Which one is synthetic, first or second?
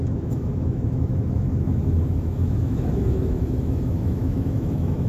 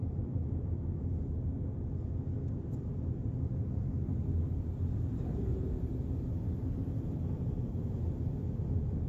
first